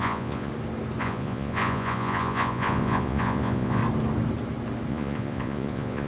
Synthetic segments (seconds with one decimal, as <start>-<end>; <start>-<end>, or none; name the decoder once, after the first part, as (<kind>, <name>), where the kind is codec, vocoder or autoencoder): 0.0-0.5 (vocoder, Vocos); 1.0-3.8; 4.9-6.1